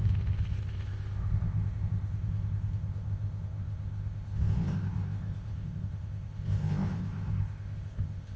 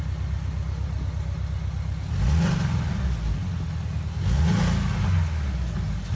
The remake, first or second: first